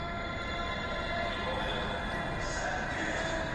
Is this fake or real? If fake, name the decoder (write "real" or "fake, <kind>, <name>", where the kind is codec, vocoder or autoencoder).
real